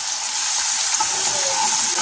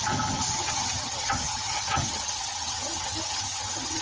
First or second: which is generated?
second